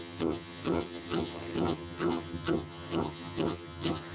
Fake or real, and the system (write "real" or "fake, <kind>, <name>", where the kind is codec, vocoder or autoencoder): fake, vocoder, HiFi-GAN